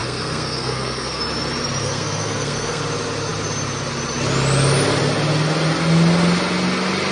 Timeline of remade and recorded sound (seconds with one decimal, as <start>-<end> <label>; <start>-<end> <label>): 0.0-1.2 remade; 1.2-1.8 recorded; 1.8-2.8 remade; 2.8-7.1 recorded